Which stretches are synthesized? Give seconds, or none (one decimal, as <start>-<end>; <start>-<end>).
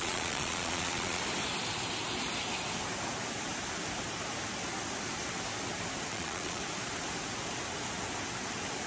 0.0-1.2; 6.1-6.6